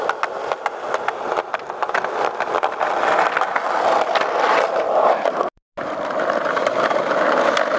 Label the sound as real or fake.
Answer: real